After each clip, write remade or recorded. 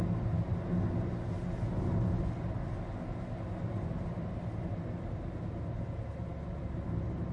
recorded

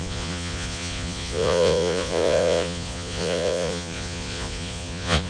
remade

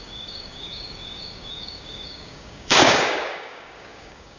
remade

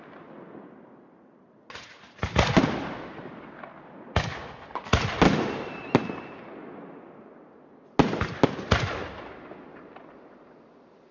recorded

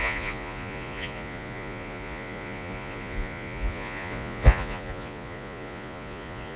remade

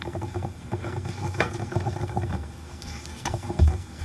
remade